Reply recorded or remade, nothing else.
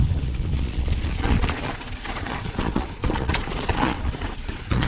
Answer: remade